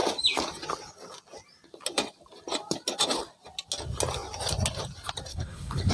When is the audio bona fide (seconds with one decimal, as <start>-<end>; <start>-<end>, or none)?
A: 0.0-5.3